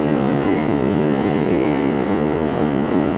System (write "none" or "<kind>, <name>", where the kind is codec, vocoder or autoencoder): vocoder, Vocos